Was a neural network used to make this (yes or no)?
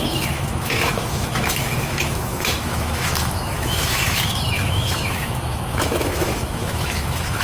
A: yes